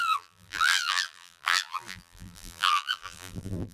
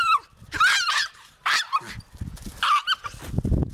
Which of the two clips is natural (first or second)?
second